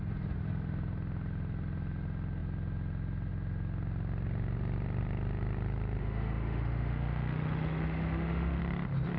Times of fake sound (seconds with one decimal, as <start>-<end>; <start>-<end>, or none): 6.0-8.6